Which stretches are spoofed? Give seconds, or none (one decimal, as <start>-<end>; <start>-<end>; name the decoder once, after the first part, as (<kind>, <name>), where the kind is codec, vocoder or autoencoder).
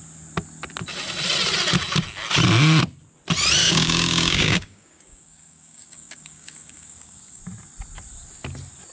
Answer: 3.6-7.4 (codec, DAC)